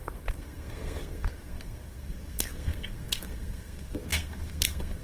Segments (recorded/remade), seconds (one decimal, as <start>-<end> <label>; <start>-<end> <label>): 0.0-5.0 remade